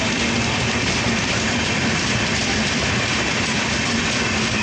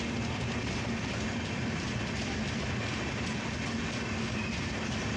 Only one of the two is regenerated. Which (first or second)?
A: first